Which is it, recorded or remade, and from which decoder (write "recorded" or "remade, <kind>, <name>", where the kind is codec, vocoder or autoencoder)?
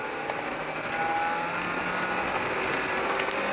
recorded